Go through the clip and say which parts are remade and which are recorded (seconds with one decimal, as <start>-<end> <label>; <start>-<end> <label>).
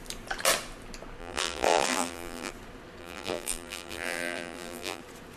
0.0-1.2 recorded; 1.2-2.5 remade; 2.5-3.0 recorded; 3.0-5.0 remade; 5.0-5.4 recorded